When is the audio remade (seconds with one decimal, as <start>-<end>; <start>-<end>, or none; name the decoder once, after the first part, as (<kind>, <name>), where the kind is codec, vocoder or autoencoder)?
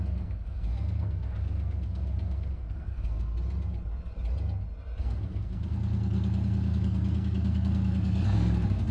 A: 0.0-3.3 (codec, SNAC); 5.0-8.9